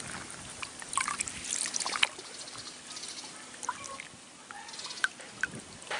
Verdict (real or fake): real